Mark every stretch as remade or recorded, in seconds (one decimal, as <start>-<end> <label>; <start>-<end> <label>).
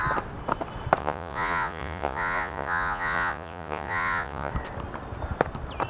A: 0.0-1.0 recorded; 1.0-4.5 remade; 4.5-5.9 recorded